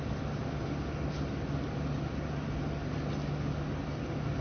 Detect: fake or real real